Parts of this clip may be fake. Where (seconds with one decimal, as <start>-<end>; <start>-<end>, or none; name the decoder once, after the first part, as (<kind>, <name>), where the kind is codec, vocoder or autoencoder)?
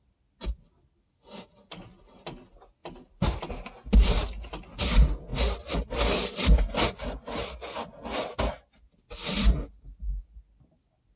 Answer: none